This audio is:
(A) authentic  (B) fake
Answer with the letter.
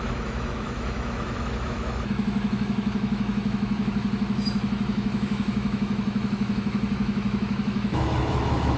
B